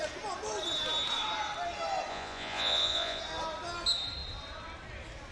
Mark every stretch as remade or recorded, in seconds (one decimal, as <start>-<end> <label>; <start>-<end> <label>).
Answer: 0.0-2.1 recorded; 2.1-3.2 remade; 3.2-5.3 recorded